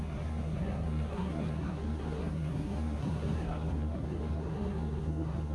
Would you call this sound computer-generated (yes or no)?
yes